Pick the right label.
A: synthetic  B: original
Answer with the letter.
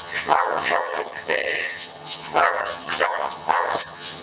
A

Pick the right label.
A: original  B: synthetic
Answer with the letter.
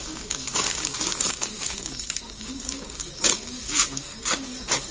B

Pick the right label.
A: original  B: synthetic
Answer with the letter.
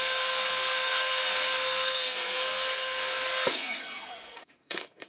B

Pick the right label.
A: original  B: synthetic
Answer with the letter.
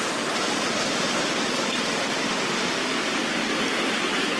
B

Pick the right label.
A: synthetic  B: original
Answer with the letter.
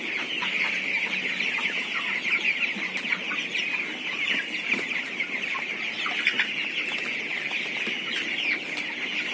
B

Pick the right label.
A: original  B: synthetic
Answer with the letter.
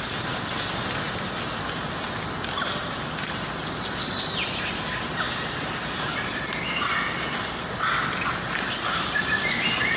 B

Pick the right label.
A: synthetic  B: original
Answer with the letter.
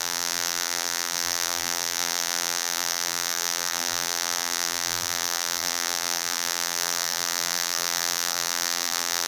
A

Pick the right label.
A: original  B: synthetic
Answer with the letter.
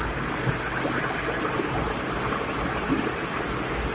A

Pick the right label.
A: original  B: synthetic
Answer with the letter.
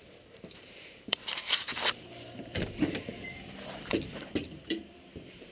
B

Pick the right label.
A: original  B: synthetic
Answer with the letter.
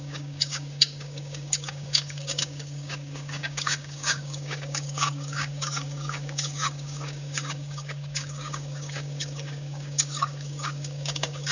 B